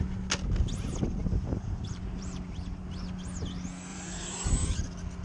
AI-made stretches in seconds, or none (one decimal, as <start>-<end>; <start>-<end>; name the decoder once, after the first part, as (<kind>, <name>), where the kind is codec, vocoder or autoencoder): 1.2-2.8 (vocoder, BigVGAN v2); 3.9-4.5